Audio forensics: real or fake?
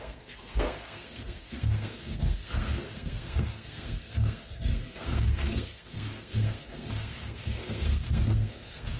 fake